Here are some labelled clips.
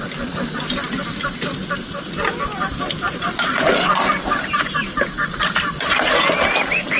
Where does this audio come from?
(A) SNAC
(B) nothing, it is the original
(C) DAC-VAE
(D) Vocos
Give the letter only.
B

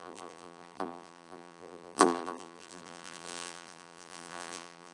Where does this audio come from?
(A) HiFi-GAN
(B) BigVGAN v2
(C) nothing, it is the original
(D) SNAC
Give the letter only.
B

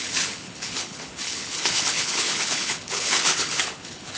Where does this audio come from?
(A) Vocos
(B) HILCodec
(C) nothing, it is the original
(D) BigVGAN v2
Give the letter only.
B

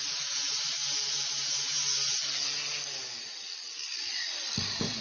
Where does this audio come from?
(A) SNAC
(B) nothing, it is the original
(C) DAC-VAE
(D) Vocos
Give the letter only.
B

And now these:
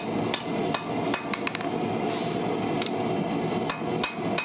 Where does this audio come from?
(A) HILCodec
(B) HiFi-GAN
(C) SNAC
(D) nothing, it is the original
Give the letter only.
D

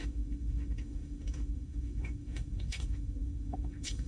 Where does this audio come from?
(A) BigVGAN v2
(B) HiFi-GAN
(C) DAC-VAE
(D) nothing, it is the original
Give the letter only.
C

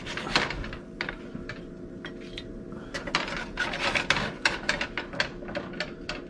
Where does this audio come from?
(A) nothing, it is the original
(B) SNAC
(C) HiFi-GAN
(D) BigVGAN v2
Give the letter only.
A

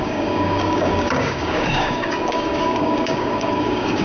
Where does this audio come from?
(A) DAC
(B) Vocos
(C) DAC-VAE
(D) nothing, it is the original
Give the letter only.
A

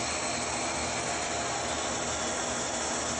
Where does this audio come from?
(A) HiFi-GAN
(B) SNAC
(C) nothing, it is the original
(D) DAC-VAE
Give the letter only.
C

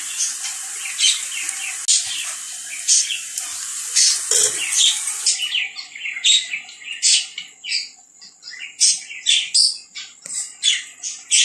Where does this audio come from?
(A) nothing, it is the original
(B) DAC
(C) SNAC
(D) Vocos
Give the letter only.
A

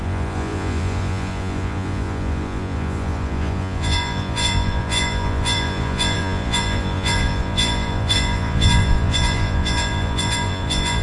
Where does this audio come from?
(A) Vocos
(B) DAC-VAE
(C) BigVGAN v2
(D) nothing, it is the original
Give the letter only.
A